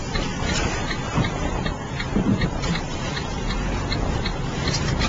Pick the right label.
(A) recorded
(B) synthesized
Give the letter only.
B